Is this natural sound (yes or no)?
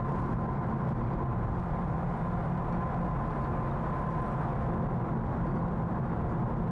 yes